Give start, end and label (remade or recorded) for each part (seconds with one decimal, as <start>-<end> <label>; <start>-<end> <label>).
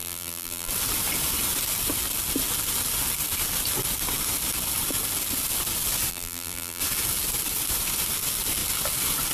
0.0-0.7 remade; 0.7-6.1 recorded; 6.1-6.8 remade; 6.8-9.3 recorded